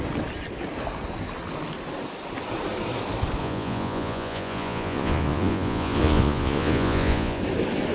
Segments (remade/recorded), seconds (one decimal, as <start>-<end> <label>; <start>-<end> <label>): 0.0-3.4 recorded; 3.4-7.4 remade; 7.4-7.9 recorded